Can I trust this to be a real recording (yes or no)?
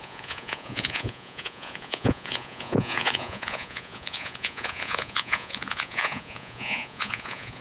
no